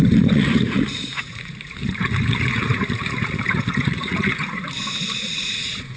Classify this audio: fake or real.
fake